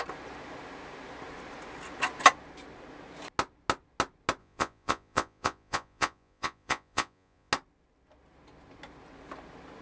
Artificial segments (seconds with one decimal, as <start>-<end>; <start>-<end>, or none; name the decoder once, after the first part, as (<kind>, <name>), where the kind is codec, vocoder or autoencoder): 4.4-7.5 (vocoder, Vocos)